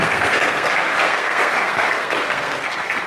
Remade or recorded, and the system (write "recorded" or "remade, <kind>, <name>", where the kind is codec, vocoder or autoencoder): remade, codec, SNAC